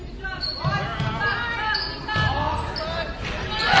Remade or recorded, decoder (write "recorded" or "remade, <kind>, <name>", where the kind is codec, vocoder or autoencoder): recorded